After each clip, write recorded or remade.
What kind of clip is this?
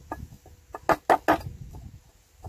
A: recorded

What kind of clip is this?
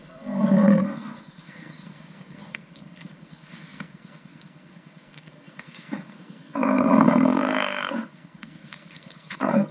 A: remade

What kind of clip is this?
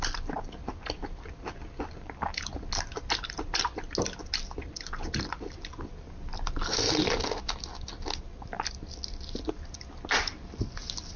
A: recorded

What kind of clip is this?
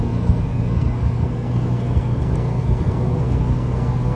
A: remade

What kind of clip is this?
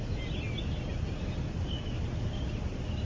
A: recorded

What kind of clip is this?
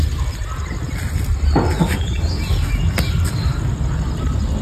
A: recorded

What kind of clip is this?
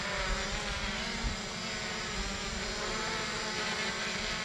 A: recorded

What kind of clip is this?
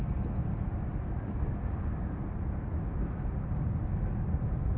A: recorded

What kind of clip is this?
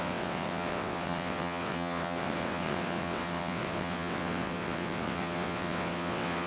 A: remade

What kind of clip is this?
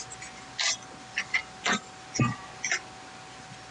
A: recorded